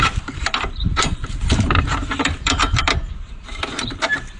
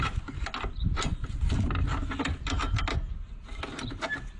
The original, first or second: second